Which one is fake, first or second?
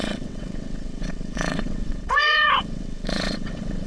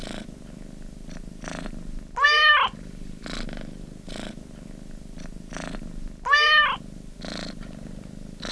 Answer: first